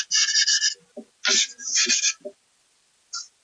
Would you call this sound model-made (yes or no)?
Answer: no